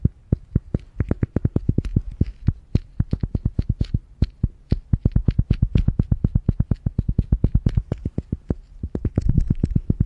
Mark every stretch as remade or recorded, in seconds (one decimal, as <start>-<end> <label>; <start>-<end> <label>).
0.0-10.1 recorded